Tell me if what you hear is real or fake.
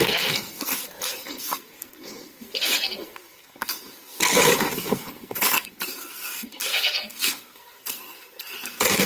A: fake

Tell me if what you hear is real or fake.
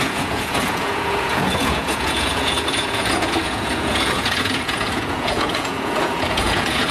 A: fake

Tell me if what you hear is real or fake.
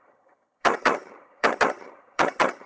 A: fake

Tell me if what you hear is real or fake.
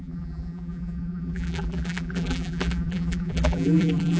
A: fake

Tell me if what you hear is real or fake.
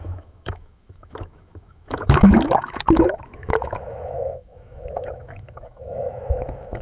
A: fake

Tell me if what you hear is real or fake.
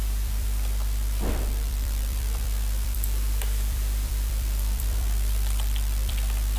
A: fake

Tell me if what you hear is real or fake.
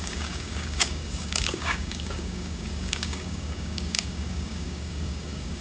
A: fake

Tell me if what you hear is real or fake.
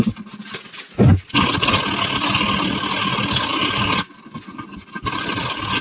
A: real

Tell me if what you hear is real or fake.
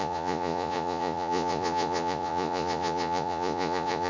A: fake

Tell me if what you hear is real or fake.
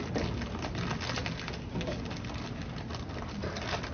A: real